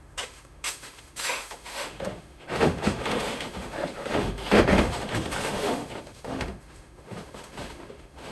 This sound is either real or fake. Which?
fake